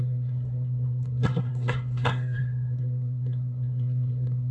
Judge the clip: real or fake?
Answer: fake